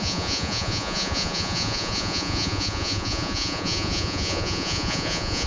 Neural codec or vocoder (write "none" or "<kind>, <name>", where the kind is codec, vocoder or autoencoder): vocoder, Vocos